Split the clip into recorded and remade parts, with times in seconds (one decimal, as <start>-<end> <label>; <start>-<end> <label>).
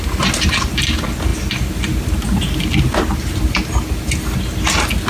0.0-5.1 recorded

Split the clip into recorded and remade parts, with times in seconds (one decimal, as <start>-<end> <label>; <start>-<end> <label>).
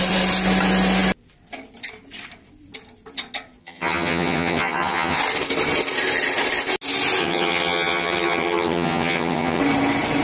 0.0-3.6 recorded; 3.6-5.2 remade; 5.2-7.2 recorded; 7.2-9.6 remade; 9.6-10.2 recorded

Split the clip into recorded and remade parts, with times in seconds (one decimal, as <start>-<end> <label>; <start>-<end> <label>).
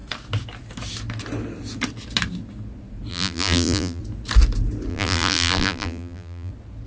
0.0-3.1 recorded; 3.1-4.0 remade; 4.0-4.9 recorded; 4.9-6.5 remade; 6.5-6.9 recorded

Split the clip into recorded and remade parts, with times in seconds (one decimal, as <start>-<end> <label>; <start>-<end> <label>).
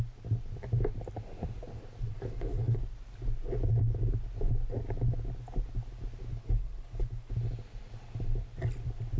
0.0-2.1 recorded; 2.1-2.8 remade; 2.8-6.3 recorded; 6.3-7.3 remade; 7.3-9.2 recorded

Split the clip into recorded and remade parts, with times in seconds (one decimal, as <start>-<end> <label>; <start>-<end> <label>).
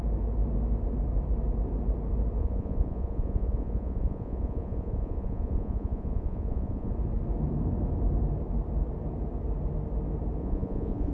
0.0-2.4 recorded; 2.4-6.9 remade; 6.9-10.4 recorded; 10.4-11.1 remade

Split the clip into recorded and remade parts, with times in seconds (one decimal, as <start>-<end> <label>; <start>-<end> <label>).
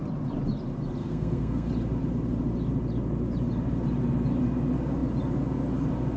0.0-1.0 recorded; 1.0-1.7 remade; 1.7-6.2 recorded